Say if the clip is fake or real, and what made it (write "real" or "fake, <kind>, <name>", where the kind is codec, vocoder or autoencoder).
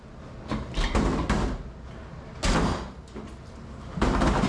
real